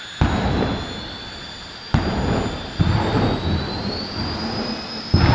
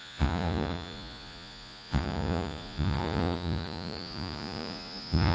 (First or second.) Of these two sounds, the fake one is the second